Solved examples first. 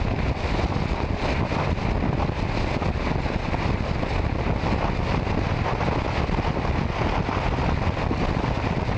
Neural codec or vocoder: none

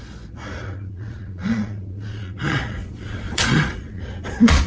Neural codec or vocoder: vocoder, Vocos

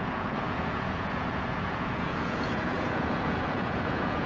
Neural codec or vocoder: vocoder, Vocos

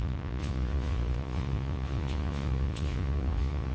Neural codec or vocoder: vocoder, Vocos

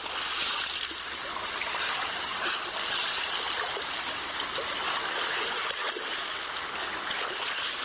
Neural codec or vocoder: none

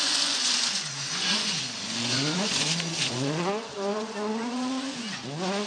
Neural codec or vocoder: vocoder, Vocos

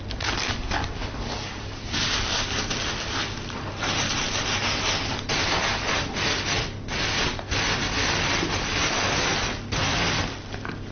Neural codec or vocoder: none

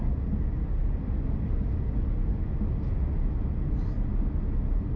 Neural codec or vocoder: none